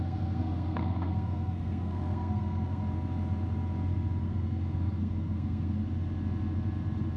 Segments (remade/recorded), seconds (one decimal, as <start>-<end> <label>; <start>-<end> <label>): 0.0-2.8 remade; 2.8-4.2 recorded; 4.2-5.8 remade; 5.8-7.2 recorded